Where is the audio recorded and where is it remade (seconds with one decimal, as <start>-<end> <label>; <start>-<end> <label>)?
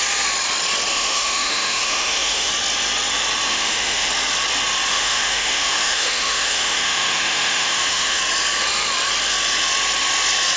0.0-0.9 recorded; 0.9-2.5 remade; 2.5-3.5 recorded; 3.5-4.1 remade; 4.1-4.9 recorded; 4.9-8.2 remade; 8.2-10.6 recorded